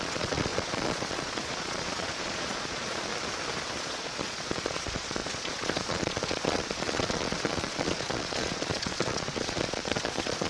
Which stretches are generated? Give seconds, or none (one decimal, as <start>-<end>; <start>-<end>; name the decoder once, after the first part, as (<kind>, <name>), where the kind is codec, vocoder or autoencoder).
0.0-3.1 (vocoder, Vocos); 3.8-10.5